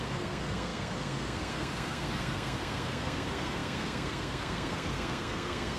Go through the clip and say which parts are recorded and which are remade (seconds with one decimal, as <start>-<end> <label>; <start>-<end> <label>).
0.0-5.8 remade